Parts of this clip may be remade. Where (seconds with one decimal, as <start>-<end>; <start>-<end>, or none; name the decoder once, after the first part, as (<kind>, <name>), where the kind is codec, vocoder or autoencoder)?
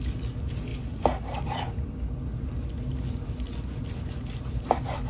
none